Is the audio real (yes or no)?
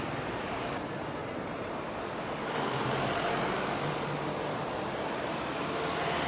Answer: yes